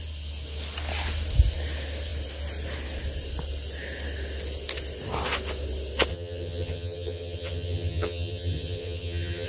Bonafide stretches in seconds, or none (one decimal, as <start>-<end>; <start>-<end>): 0.0-6.1